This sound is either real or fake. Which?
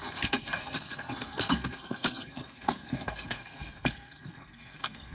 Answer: fake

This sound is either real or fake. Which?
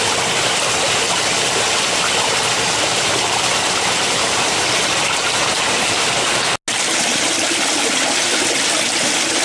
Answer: real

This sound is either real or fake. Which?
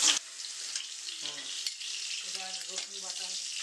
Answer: real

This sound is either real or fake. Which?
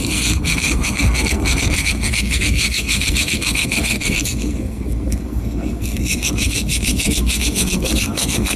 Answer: fake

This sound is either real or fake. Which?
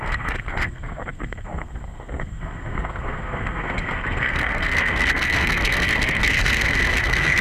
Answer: fake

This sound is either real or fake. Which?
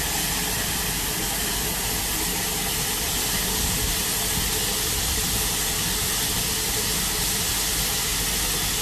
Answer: real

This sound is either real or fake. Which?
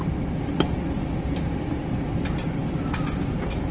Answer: real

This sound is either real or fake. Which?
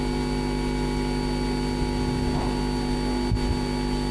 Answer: real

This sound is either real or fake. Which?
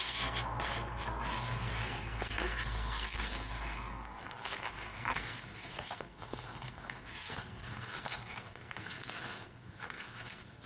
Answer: fake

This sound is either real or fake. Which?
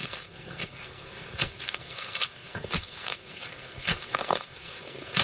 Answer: fake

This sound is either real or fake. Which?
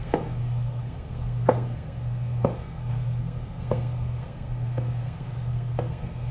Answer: fake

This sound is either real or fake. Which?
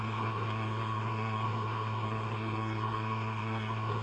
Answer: fake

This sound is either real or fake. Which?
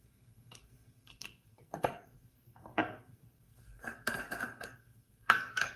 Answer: fake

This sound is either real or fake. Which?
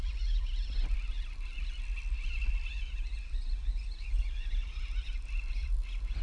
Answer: real